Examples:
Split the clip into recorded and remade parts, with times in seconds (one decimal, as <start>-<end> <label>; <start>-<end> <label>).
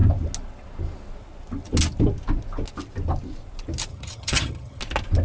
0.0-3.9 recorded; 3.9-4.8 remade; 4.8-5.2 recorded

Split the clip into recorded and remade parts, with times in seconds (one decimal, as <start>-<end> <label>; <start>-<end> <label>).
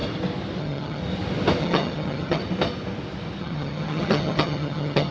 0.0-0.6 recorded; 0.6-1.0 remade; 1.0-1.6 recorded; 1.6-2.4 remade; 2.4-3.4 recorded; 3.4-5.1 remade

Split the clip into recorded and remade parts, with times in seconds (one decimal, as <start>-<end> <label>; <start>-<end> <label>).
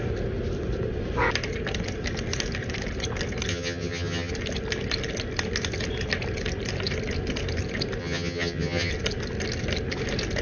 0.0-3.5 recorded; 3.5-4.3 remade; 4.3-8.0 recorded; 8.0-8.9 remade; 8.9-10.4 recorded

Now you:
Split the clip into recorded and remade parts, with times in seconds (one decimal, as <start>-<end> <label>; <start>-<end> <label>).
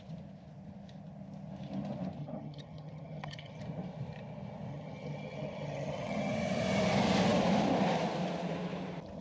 0.0-2.2 recorded; 2.2-3.6 remade; 3.6-4.7 recorded; 4.7-6.3 remade; 6.3-9.2 recorded